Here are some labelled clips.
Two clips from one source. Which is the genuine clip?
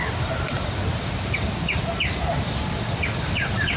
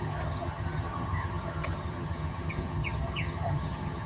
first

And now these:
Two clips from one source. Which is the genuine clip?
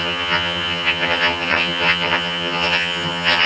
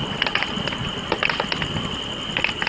second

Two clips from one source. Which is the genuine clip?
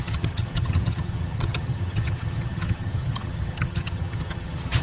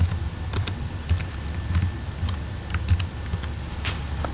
second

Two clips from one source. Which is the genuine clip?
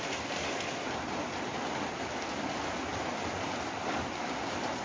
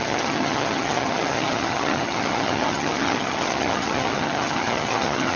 first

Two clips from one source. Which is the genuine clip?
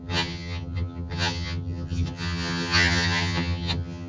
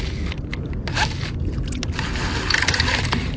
second